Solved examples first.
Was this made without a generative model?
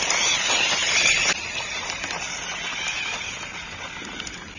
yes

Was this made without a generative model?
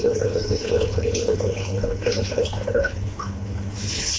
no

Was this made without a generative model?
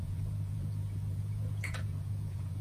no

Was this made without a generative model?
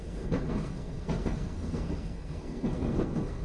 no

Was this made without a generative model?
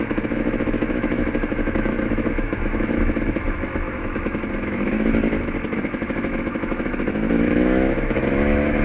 no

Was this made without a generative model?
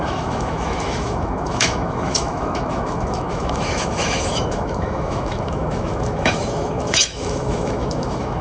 no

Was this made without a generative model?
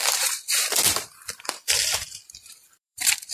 no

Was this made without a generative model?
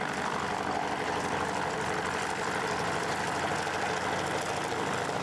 yes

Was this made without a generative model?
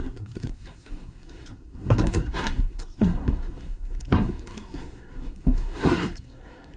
no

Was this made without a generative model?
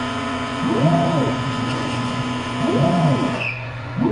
no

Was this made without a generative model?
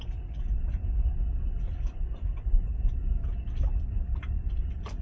yes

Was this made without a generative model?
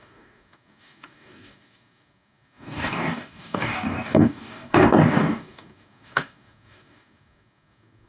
no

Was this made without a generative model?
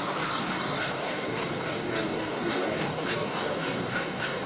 no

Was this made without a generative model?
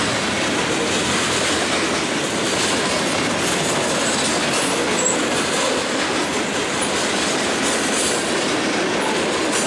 yes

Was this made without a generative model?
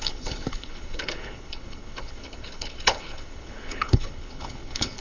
no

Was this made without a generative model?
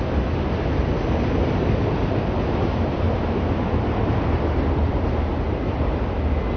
yes